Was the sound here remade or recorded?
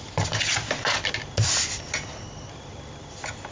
recorded